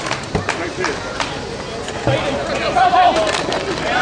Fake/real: real